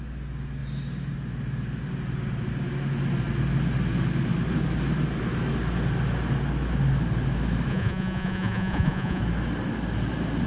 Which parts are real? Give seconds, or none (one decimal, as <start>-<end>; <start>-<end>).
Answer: 0.0-7.7; 9.2-10.5